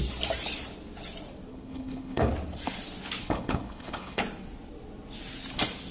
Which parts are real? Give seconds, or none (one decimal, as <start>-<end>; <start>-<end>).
0.0-1.5; 2.3-3.2; 4.2-5.9